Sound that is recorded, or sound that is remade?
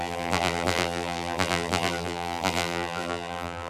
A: remade